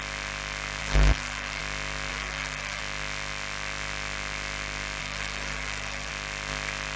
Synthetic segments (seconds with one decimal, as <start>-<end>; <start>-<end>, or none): 0.8-1.6; 2.1-2.8; 5.0-6.1